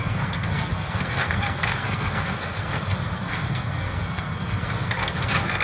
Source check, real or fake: fake